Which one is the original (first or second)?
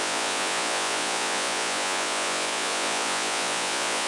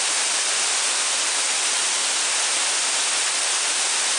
second